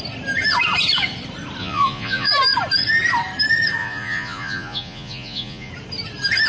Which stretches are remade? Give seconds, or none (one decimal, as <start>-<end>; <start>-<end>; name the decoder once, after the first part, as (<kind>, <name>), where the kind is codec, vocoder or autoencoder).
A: 1.6-2.3 (vocoder, Vocos); 3.8-5.7